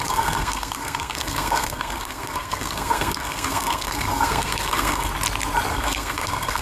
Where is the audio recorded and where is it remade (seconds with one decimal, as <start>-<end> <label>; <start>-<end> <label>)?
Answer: 0.0-5.1 remade; 5.1-5.7 recorded; 5.7-6.6 remade